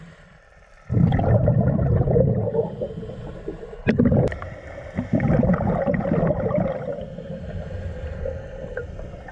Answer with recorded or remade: remade